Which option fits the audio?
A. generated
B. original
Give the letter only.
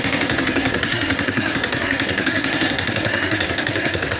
A